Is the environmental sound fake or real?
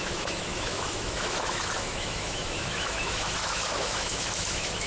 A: fake